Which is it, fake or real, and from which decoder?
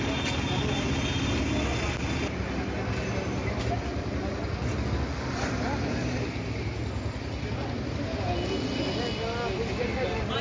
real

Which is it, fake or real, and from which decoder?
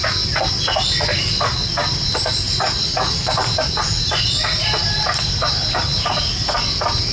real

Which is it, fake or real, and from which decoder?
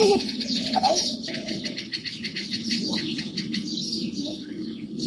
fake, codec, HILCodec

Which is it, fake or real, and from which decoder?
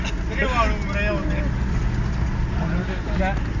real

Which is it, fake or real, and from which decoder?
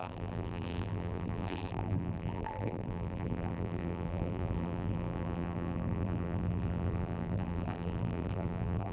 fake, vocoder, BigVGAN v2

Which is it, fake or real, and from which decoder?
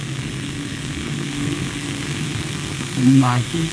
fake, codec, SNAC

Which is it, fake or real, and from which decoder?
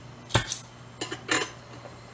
real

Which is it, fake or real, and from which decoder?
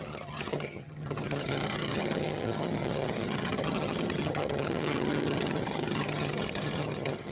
fake, vocoder, HiFi-GAN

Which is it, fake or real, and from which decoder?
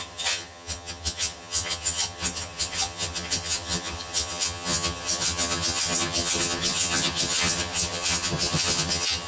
fake, vocoder, HiFi-GAN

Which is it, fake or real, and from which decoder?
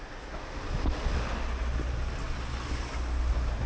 real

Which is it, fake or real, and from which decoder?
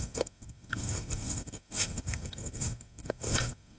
fake, codec, SNAC